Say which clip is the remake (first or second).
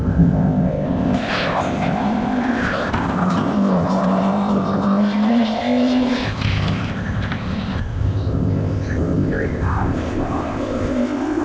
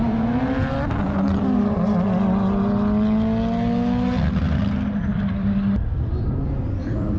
first